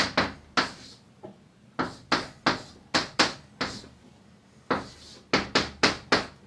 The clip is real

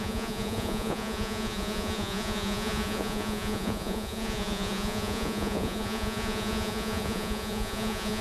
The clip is fake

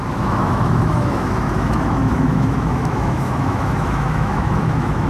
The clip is fake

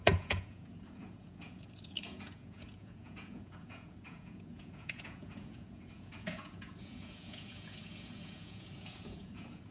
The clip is fake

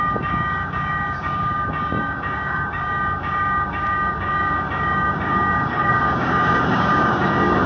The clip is fake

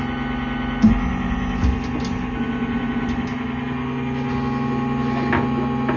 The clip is real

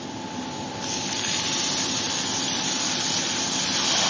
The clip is real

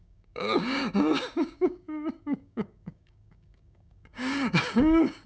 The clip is fake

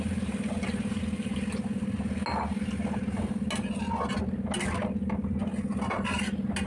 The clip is real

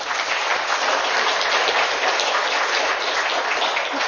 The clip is real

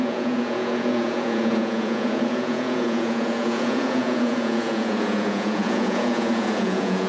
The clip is fake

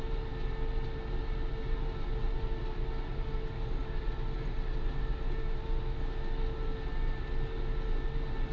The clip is real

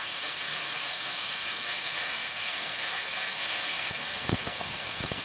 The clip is fake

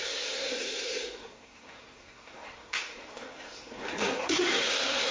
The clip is fake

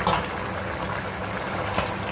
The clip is real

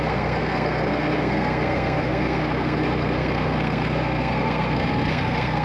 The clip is fake